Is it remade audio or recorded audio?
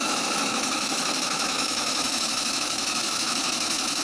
remade